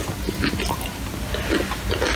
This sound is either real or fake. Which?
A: real